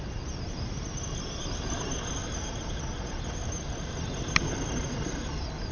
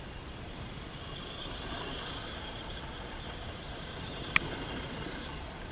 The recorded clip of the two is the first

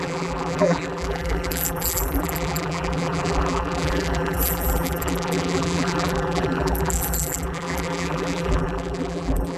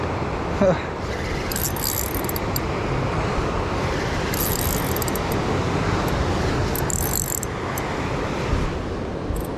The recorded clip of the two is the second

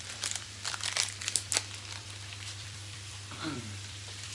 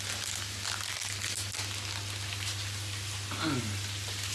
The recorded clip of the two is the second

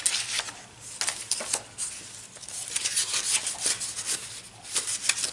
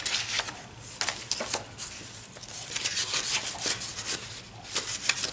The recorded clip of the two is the first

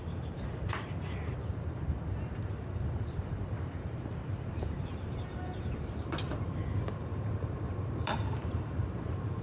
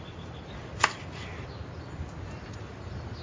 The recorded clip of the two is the second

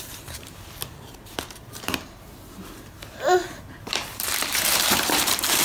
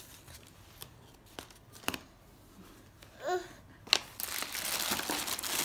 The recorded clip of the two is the second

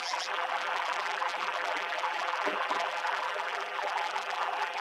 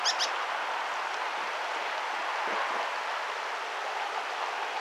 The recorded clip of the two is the second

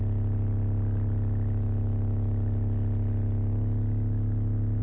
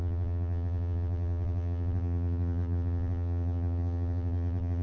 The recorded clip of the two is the first